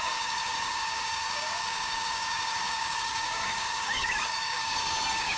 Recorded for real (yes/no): no